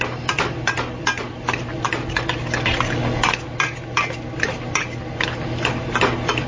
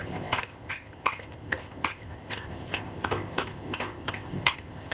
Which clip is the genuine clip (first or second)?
first